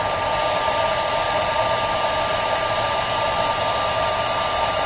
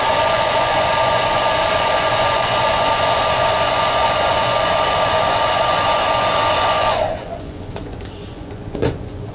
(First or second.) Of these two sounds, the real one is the first